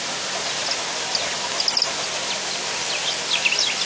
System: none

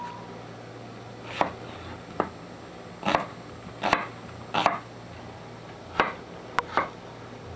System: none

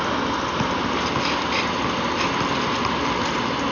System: none